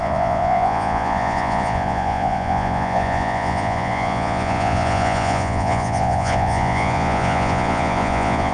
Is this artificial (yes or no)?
yes